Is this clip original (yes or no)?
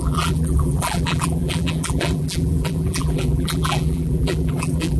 no